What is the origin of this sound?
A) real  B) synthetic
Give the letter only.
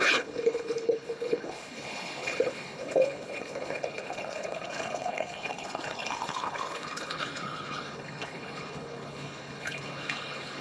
B